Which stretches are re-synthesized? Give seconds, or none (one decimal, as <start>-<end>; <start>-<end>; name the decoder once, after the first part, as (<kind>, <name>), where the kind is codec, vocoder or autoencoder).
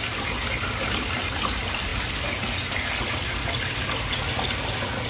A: none